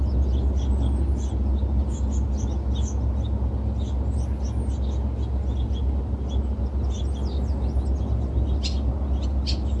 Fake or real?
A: real